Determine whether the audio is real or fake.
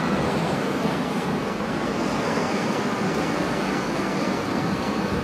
fake